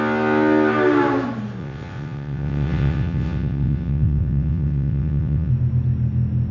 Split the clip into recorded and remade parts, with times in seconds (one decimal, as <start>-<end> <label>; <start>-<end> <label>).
0.0-1.6 recorded; 1.6-5.5 remade; 5.5-6.5 recorded